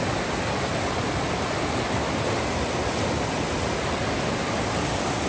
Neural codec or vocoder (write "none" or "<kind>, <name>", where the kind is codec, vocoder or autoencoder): none